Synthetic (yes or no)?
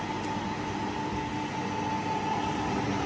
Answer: no